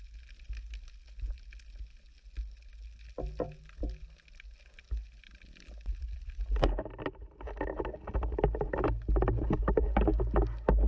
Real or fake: real